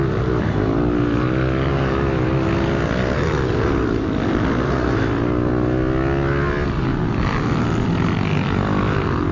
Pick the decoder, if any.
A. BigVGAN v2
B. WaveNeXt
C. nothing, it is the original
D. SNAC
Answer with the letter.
C